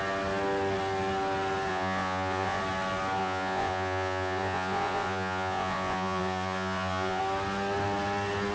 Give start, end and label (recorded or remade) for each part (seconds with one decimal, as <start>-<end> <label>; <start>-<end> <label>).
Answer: 0.0-1.7 recorded; 1.7-2.6 remade; 2.6-3.2 recorded; 3.2-7.2 remade; 7.2-8.5 recorded